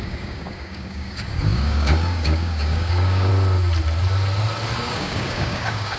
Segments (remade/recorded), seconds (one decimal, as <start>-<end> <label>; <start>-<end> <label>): 0.0-3.3 remade; 3.3-4.8 recorded; 4.8-6.0 remade